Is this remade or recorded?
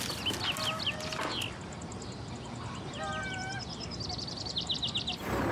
recorded